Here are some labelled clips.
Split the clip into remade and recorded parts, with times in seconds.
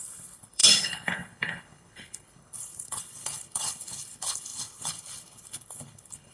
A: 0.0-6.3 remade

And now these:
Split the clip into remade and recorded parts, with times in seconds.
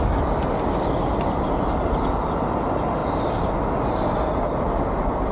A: 0.0-5.3 recorded